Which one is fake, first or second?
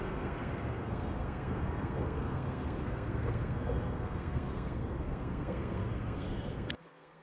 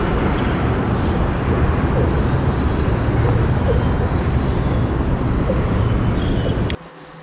first